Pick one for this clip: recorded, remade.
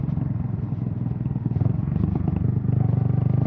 recorded